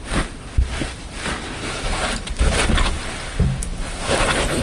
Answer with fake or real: real